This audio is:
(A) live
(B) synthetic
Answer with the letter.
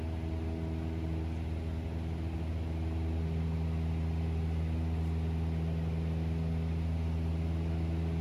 A